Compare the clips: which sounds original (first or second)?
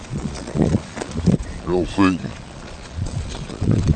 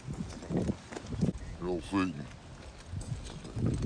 second